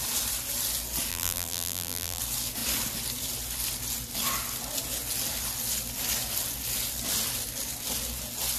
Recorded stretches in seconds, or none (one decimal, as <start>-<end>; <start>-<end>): 0.0-1.1; 2.2-8.6